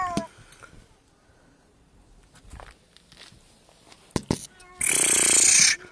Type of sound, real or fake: real